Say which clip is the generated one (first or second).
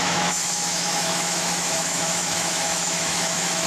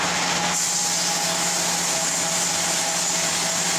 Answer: first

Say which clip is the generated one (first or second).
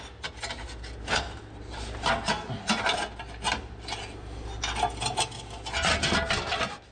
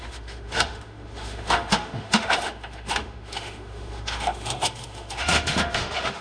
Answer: second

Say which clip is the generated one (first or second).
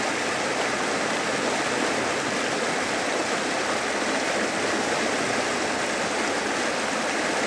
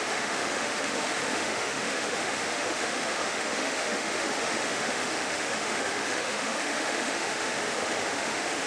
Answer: second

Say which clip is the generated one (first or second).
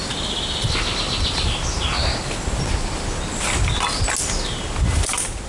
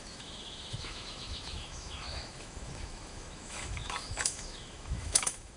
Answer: second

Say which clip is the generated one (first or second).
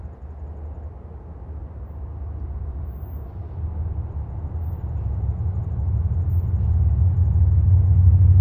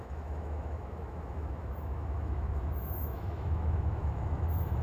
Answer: second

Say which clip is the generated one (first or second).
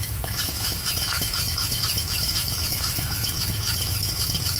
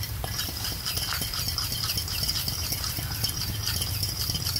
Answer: first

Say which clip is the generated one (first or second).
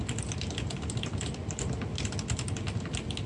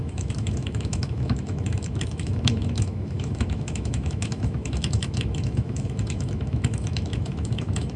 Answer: second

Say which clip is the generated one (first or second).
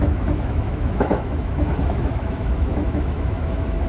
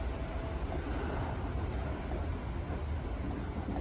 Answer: first